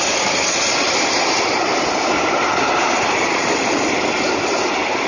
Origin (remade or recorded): recorded